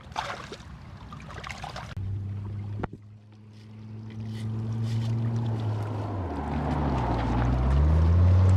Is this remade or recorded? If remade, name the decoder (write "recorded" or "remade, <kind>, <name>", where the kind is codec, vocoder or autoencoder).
recorded